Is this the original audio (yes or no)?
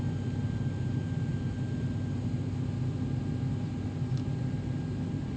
yes